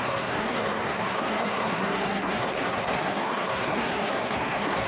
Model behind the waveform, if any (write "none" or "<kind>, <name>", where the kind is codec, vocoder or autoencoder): codec, SNAC